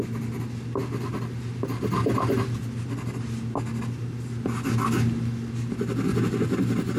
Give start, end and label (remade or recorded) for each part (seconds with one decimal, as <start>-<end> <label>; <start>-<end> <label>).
0.0-7.0 recorded